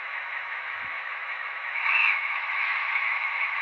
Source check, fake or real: fake